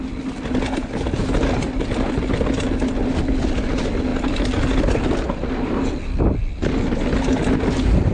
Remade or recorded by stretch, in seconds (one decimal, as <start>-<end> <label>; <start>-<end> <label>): 0.0-8.1 recorded